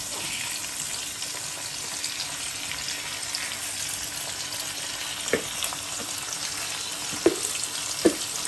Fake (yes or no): no